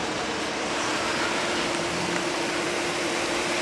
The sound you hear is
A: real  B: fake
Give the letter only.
B